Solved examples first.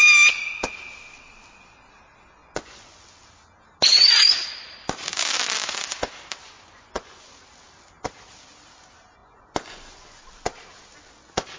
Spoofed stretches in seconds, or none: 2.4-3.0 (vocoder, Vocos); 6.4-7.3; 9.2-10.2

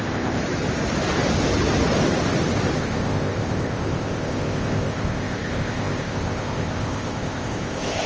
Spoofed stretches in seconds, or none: 0.0-0.4 (codec, ZipCodec); 2.8-8.1